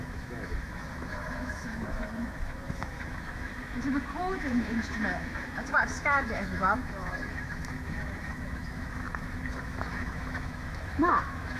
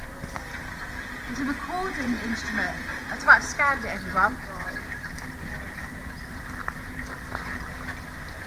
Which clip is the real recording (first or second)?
second